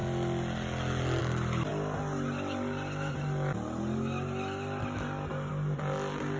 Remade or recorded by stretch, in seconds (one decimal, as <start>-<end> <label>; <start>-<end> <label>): 0.0-6.4 recorded